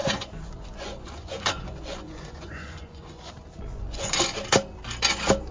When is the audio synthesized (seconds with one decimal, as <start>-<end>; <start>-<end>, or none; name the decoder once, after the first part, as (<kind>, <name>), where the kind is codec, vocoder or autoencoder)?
0.0-3.3 (vocoder, Vocos); 3.7-4.2